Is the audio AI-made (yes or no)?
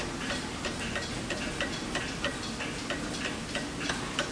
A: no